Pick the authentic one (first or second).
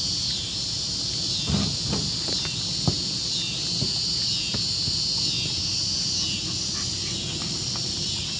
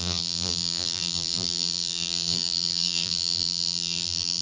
first